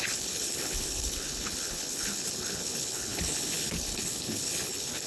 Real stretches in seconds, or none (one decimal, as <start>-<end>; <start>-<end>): none